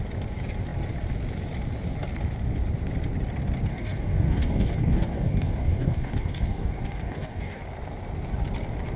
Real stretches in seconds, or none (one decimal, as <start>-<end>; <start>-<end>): 0.0-3.7; 7.6-9.0